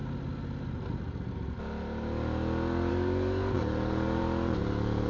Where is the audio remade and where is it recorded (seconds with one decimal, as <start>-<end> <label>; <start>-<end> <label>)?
0.0-2.9 recorded; 2.9-4.2 remade; 4.2-5.1 recorded